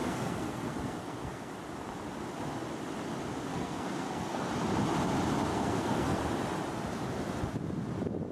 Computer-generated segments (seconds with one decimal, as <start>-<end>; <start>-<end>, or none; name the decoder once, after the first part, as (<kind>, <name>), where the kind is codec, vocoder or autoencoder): 0.0-1.5 (codec, SNAC); 3.5-4.5; 5.5-6.2